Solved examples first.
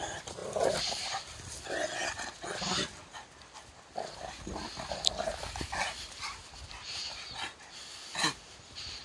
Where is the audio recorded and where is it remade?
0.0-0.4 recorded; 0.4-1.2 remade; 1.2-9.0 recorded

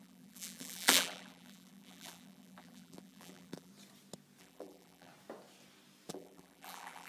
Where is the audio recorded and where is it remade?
0.0-3.7 remade; 3.7-4.4 recorded; 4.4-5.1 remade; 5.1-6.1 recorded; 6.1-7.1 remade

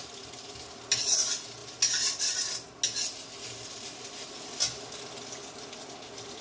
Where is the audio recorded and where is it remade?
0.0-6.4 recorded

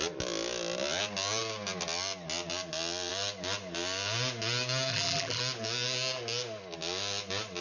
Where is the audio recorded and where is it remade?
0.0-4.9 recorded; 4.9-5.4 remade; 5.4-7.6 recorded

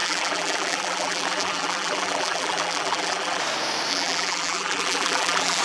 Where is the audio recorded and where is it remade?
0.0-3.4 remade; 3.4-3.9 recorded; 3.9-5.6 remade

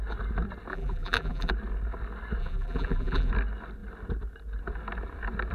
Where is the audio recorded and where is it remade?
0.0-0.7 recorded; 0.7-1.5 remade; 1.5-2.4 recorded; 2.4-3.3 remade; 3.3-5.5 recorded

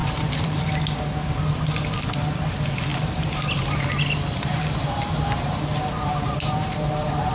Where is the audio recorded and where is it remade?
0.0-0.8 remade; 0.8-2.9 recorded; 2.9-7.3 remade

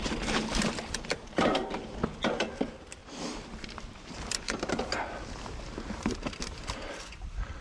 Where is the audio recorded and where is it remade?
0.0-2.0 remade; 2.0-2.5 recorded; 2.5-3.0 remade; 3.0-6.0 recorded; 6.0-7.6 remade